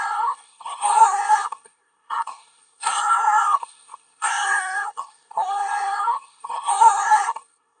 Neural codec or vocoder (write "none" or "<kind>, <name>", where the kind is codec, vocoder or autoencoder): codec, SNAC